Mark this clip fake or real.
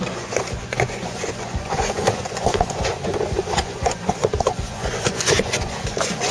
fake